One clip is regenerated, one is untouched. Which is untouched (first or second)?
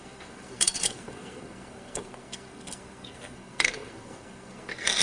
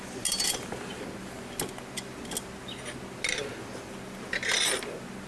second